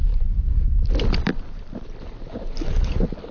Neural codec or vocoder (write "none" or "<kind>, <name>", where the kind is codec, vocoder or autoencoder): none